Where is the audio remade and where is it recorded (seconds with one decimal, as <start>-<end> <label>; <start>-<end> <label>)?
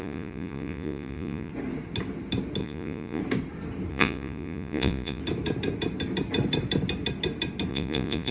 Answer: 0.0-1.5 remade; 1.5-2.6 recorded; 2.6-3.2 remade; 3.2-3.9 recorded; 3.9-5.2 remade; 5.2-7.7 recorded; 7.7-8.3 remade